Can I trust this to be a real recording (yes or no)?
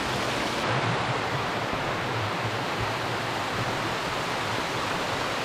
yes